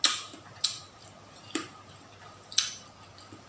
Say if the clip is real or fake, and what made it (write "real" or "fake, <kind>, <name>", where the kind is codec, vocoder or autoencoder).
real